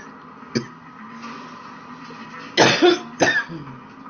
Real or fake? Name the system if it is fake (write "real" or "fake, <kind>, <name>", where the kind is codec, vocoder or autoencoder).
real